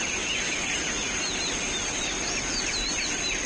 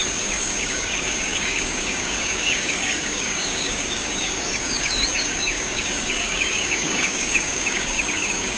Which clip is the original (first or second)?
first